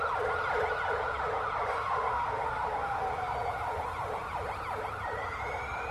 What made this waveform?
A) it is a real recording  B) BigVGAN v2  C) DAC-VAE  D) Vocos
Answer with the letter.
A